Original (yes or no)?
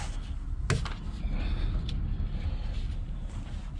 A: yes